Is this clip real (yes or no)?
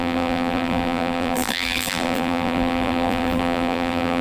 no